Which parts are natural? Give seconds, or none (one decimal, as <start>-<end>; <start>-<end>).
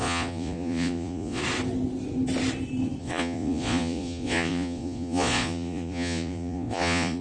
1.4-3.0